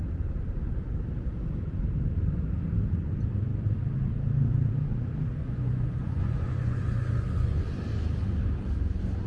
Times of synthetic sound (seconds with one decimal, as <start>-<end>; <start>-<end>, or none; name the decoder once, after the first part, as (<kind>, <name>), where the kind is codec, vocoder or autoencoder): 5.4-7.6 (vocoder, Vocos)